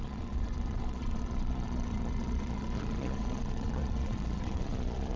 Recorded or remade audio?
remade